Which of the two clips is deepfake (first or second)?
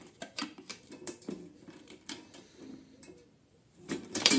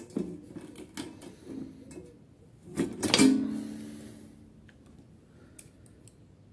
first